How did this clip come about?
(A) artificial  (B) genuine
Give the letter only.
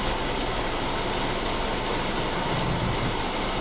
B